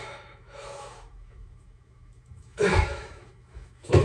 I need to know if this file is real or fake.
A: fake